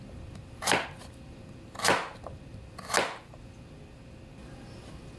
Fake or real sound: real